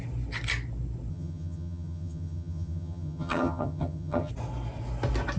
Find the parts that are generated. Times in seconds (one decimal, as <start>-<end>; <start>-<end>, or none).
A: 1.1-4.3